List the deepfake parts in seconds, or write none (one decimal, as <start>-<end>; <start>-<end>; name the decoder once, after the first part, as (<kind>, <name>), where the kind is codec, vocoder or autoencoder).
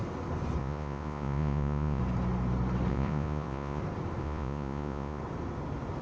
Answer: 0.6-2.0 (vocoder, Vocos); 2.9-3.8; 4.2-5.2